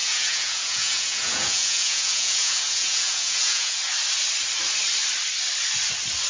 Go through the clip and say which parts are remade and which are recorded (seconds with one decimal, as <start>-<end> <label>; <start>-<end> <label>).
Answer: 0.0-3.8 remade; 3.8-6.3 recorded